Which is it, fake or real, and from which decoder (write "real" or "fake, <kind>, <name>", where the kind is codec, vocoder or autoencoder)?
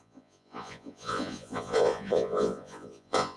fake, vocoder, Vocos